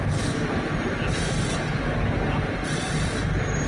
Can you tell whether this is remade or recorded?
recorded